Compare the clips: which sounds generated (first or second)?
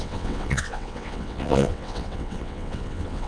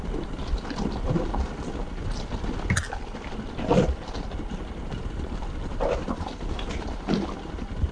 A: first